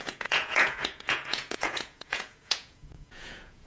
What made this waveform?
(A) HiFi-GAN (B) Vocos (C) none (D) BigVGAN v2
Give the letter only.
B